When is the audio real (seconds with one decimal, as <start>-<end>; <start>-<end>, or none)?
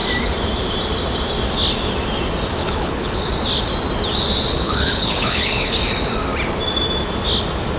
0.0-2.6; 3.2-4.5; 5.7-7.8